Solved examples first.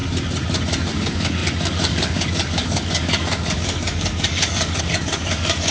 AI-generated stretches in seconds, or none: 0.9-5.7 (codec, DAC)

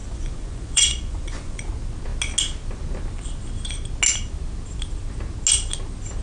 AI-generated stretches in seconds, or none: 0.0-1.7 (vocoder, Vocos)

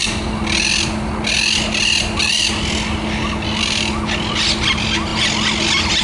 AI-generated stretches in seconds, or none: none

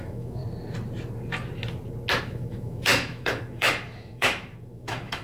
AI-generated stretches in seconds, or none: 0.0-0.4 (autoencoder, DAC-VAE); 2.2-5.2

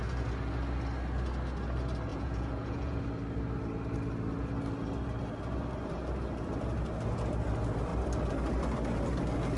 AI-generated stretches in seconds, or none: 2.1-3.0 (vocoder, Vocos)

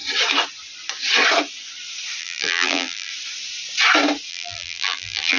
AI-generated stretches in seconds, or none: 2.2-3.1 (vocoder, BigVGAN v2); 4.3-5.4